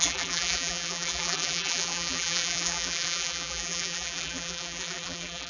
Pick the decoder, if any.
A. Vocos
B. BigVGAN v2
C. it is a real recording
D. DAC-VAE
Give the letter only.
B